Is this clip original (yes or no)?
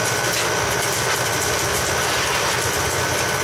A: yes